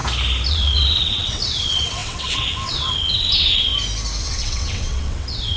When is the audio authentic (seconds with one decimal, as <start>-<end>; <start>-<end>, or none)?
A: 0.0-0.5; 3.7-4.2